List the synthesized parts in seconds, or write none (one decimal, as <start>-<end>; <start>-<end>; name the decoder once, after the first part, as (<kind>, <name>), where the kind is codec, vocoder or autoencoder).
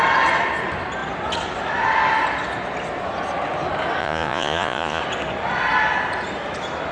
4.0-5.0 (vocoder, Vocos)